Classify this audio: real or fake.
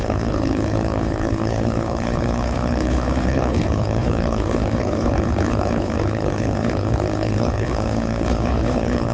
fake